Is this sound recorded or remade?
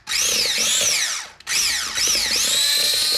recorded